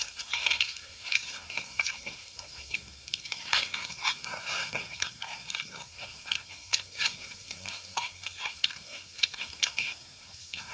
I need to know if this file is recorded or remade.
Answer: remade